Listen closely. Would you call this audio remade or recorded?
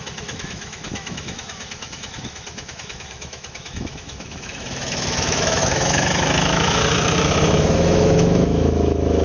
remade